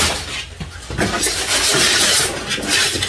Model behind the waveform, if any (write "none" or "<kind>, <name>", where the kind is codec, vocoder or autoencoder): none